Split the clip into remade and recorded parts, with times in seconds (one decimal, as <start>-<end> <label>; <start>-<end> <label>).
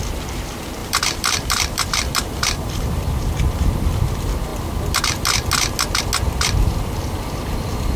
0.0-0.8 recorded; 0.8-3.0 remade; 3.0-8.0 recorded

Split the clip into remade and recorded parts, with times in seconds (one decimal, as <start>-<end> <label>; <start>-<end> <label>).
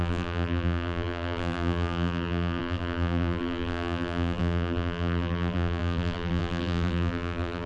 0.0-7.7 remade